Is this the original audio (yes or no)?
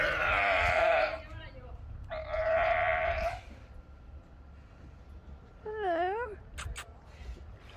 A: yes